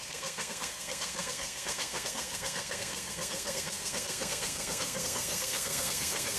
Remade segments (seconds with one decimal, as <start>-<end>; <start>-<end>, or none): 0.0-6.4

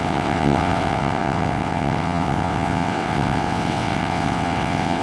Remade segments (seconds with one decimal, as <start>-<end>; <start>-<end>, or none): 0.0-5.0

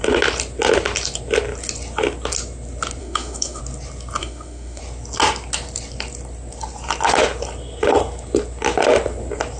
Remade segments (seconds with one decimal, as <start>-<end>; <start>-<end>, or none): 3.0-3.6; 4.2-4.8

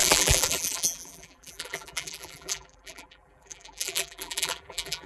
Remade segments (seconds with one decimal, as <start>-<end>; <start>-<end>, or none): 0.0-5.1

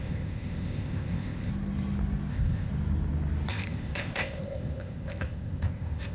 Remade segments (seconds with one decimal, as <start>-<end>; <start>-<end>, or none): 0.0-1.5; 2.3-2.7; 3.5-6.1

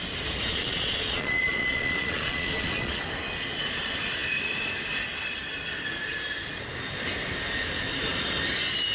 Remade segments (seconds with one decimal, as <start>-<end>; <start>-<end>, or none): 0.5-3.0

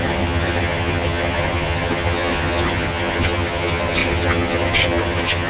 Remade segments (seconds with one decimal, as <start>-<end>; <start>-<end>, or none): 0.0-5.5

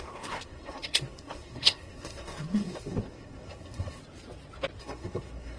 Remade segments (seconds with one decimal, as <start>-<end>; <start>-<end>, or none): 0.0-4.0; 4.8-5.6